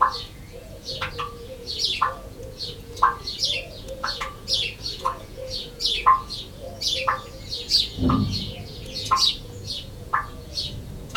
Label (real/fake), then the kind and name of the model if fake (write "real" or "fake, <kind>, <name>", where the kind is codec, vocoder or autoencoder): fake, vocoder, Vocos